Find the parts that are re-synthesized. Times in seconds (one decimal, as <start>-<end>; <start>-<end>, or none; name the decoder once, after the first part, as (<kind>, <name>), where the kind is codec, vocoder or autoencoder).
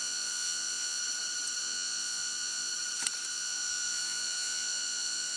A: 0.0-1.0 (vocoder, Vocos); 1.6-2.7; 3.3-5.4